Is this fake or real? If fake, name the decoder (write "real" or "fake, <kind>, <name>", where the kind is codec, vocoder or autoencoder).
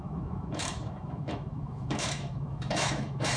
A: fake, autoencoder, DAC-VAE